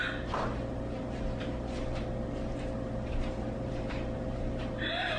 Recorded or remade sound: remade